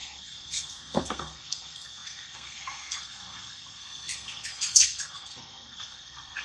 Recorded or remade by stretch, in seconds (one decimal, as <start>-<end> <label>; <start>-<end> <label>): 0.0-6.4 remade